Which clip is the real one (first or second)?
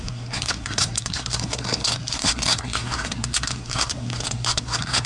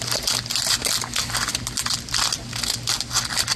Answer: second